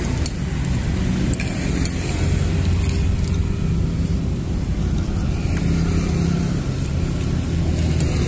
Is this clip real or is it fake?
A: real